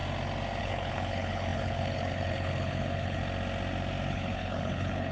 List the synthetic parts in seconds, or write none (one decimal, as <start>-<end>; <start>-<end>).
0.6-3.2; 4.1-5.1